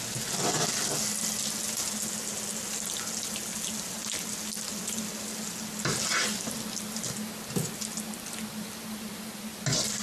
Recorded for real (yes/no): yes